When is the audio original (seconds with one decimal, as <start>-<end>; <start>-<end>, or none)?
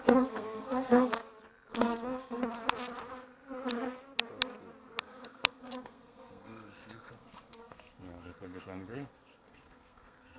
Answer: 1.2-1.7; 2.4-5.0